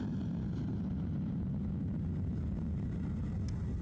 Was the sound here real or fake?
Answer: real